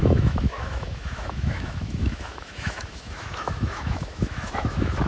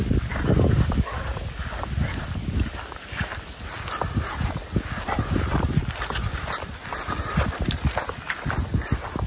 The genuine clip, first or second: second